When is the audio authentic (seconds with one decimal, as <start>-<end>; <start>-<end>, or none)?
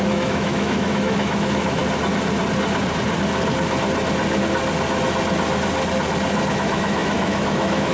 1.8-6.5